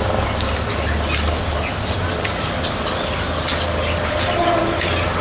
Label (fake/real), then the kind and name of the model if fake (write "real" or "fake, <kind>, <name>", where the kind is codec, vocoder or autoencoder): real